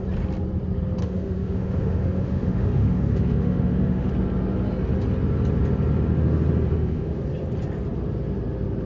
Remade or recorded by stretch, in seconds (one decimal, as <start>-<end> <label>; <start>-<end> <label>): 0.0-1.0 recorded; 1.0-4.1 remade; 4.1-6.7 recorded; 6.7-7.2 remade; 7.2-8.9 recorded